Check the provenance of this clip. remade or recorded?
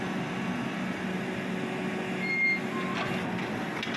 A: recorded